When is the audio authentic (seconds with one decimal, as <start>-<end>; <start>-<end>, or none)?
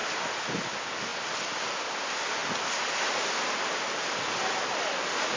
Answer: 0.0-5.4